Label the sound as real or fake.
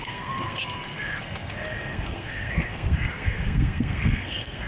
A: fake